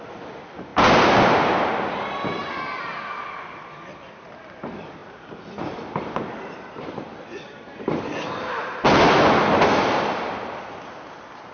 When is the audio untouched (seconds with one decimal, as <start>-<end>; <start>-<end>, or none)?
0.0-11.5